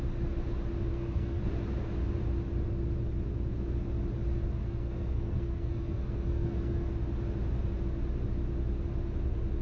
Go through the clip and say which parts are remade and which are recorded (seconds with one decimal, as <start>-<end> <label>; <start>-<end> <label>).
0.0-0.9 recorded; 0.9-1.4 remade; 1.4-4.6 recorded; 4.6-6.9 remade; 6.9-9.6 recorded